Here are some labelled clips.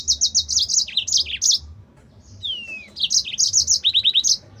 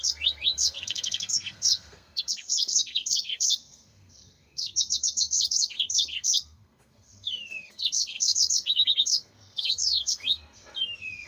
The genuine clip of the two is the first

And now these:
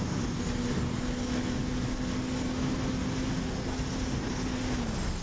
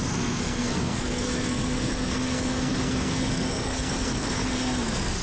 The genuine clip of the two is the first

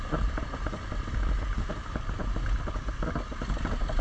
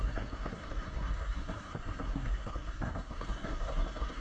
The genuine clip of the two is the first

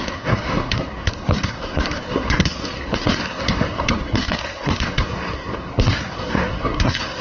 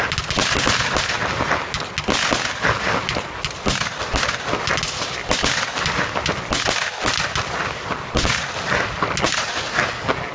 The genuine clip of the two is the second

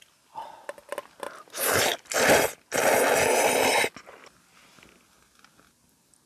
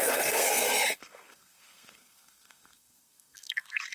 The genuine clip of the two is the first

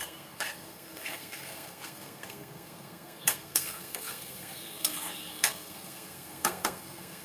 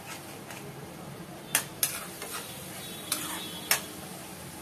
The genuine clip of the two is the second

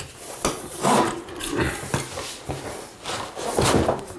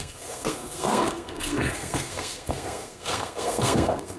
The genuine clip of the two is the first